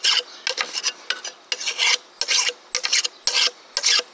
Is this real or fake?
real